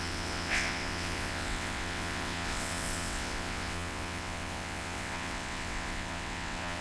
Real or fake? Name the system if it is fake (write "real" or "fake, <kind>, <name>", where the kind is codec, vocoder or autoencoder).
fake, vocoder, WaveNeXt